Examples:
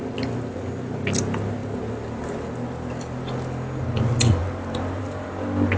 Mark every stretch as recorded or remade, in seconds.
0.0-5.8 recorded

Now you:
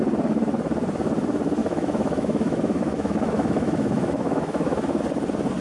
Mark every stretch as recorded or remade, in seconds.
0.0-1.6 recorded; 1.6-5.0 remade; 5.0-5.6 recorded

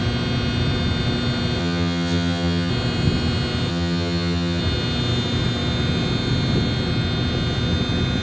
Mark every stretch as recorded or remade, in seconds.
0.0-1.6 recorded; 1.6-2.7 remade; 2.7-3.7 recorded; 3.7-4.6 remade; 4.6-8.2 recorded

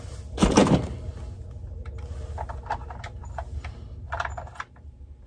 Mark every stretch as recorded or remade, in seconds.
0.0-5.3 recorded

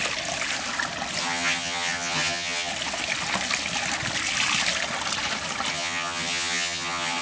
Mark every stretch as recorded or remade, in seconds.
0.0-1.2 recorded; 1.2-2.7 remade; 2.7-5.7 recorded; 5.7-7.2 remade